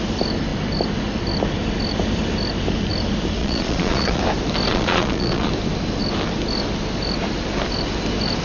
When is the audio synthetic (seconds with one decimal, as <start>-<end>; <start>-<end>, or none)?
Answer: 3.4-4.2; 4.7-5.5